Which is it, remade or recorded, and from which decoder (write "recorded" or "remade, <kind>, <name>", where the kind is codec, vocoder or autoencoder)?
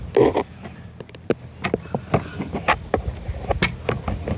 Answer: recorded